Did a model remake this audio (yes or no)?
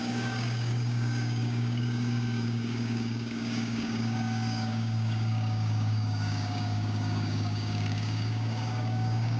yes